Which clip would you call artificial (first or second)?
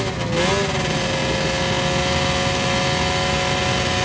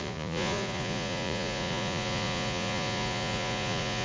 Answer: second